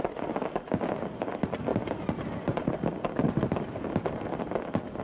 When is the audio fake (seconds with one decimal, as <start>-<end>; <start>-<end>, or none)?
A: 1.7-2.7; 3.2-4.3